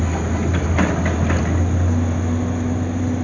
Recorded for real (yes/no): yes